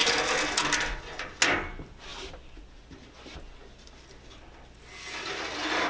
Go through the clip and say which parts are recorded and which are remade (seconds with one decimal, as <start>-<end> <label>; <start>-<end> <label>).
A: 0.0-5.9 recorded